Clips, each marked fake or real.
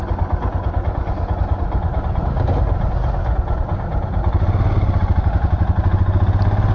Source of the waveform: real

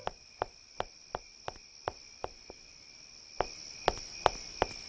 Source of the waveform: real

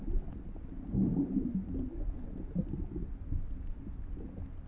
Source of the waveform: real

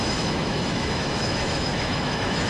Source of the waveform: fake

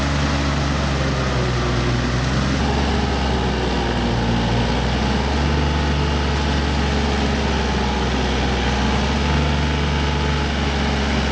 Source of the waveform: real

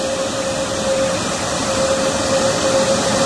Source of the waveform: real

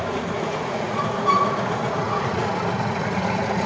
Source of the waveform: fake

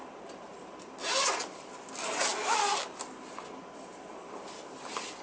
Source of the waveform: real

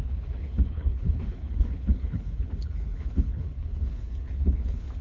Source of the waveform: fake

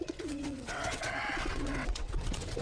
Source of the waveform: fake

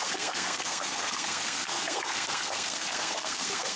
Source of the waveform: fake